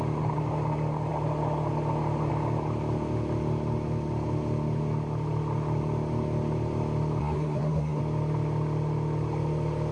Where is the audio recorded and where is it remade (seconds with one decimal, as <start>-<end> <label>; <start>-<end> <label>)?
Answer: 0.0-7.2 recorded; 7.2-8.0 remade; 8.0-9.9 recorded

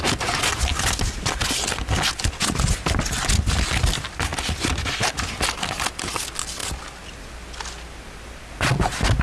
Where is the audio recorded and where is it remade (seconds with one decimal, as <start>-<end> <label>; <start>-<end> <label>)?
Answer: 0.0-9.2 recorded

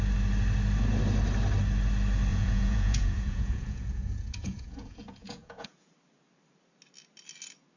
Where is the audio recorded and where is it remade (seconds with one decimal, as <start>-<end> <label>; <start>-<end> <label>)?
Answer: 0.0-2.3 recorded; 2.3-5.9 remade; 5.9-7.8 recorded

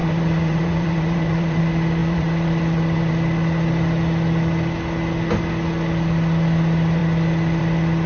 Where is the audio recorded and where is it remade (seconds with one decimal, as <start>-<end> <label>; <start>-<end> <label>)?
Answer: 0.0-1.6 remade; 1.6-2.0 recorded; 2.0-3.1 remade; 3.1-8.1 recorded

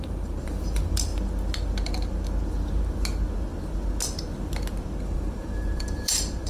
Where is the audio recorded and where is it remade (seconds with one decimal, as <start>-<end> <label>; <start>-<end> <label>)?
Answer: 0.0-1.1 remade; 1.1-5.0 recorded; 5.0-6.5 remade